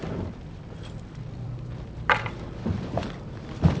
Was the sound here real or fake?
fake